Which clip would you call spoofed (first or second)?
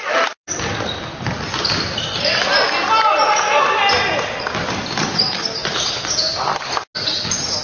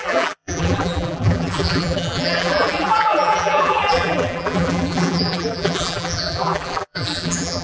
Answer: second